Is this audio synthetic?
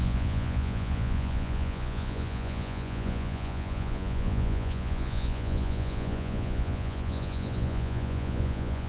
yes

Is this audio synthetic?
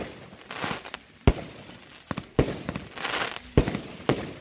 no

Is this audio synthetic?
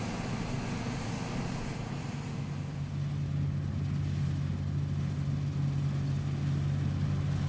no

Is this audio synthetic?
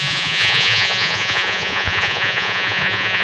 yes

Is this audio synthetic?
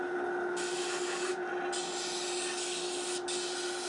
no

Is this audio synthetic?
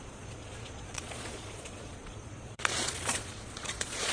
yes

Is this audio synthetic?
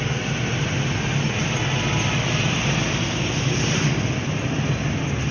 no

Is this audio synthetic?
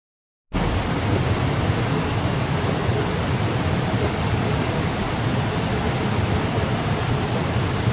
no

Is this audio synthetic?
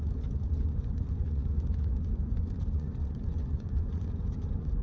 yes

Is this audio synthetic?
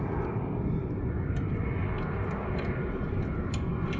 no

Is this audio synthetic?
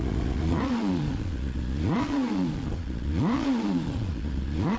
yes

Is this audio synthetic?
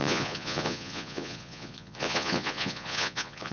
yes